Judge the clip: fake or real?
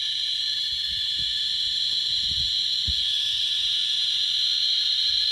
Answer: real